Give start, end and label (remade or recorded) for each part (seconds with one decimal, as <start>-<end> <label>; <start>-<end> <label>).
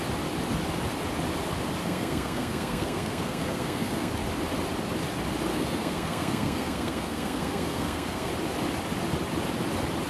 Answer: 0.0-1.8 recorded; 1.8-4.1 remade; 4.1-5.5 recorded; 5.5-8.3 remade; 8.3-10.1 recorded